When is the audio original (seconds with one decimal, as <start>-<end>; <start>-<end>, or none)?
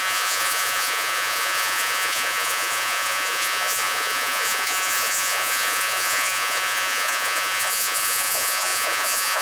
none